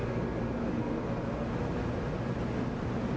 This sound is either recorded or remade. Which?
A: recorded